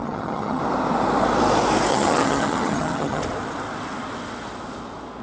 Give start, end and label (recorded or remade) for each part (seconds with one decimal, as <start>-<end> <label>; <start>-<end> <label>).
0.0-0.6 remade; 0.6-1.9 recorded; 1.9-3.2 remade; 3.2-5.2 recorded